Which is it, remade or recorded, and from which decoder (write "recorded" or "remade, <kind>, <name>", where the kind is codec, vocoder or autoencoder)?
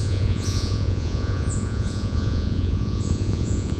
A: remade, vocoder, Vocos